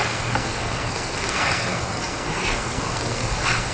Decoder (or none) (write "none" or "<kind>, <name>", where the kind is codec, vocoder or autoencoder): codec, SNAC